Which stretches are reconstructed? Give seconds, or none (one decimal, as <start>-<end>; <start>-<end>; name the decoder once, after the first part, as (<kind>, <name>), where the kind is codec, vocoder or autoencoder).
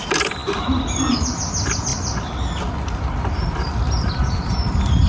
none